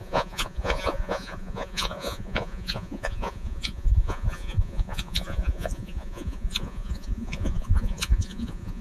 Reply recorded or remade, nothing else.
remade